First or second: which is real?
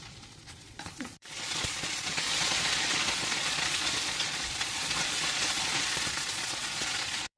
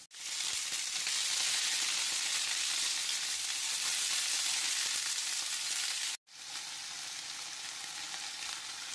second